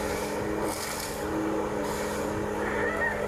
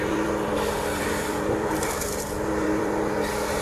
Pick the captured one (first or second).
first